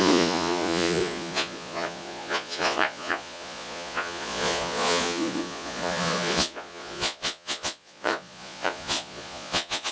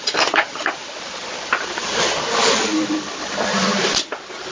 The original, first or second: second